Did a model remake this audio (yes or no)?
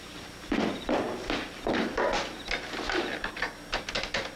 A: no